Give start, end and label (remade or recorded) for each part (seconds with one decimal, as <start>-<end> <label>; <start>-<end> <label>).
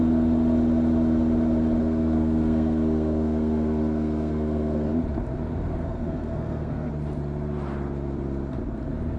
0.0-1.8 recorded; 1.8-4.9 remade; 4.9-5.8 recorded; 5.8-6.9 remade; 6.9-9.2 recorded